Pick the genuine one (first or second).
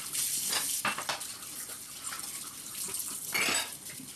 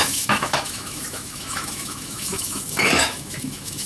first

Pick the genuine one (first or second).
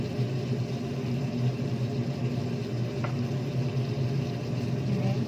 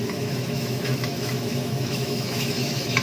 first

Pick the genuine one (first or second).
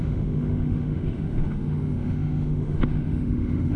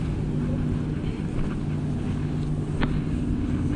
second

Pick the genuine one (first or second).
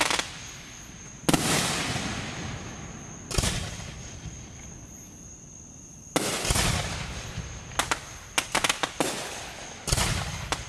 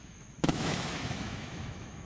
first